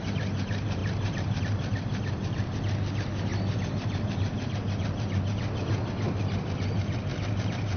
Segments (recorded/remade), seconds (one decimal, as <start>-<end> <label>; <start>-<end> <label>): 0.0-7.8 recorded

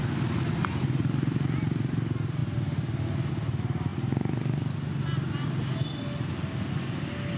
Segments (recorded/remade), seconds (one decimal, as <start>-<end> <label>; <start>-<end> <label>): 0.0-7.4 recorded

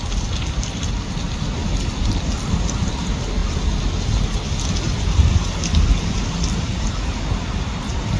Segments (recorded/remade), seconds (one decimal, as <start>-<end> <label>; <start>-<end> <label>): 0.0-8.2 recorded

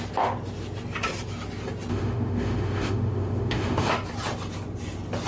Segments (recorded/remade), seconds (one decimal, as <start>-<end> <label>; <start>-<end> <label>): 0.0-1.9 recorded; 1.9-3.9 remade; 3.9-5.3 recorded

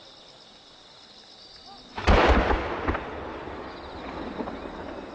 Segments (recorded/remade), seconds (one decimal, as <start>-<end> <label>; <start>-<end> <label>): 0.0-5.1 recorded

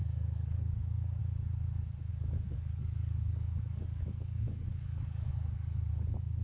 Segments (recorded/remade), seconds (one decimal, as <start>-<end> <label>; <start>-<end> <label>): 0.0-1.2 remade; 1.2-2.1 recorded; 2.1-5.9 remade; 5.9-6.4 recorded